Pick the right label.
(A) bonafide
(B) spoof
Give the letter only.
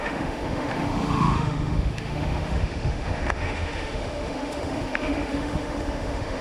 B